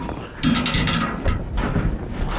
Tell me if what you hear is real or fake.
real